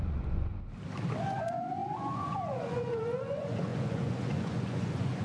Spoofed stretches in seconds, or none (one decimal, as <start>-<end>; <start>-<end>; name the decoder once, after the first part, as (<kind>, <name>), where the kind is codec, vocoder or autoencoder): 0.0-0.5 (vocoder, Vocos); 1.2-5.2